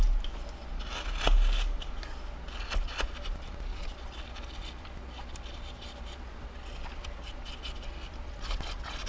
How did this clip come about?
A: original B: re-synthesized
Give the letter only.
A